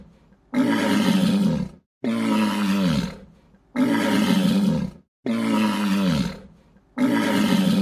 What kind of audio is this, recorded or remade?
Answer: recorded